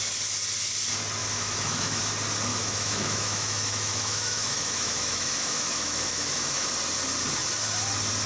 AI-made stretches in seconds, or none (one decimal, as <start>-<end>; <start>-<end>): 1.2-2.0; 2.5-6.7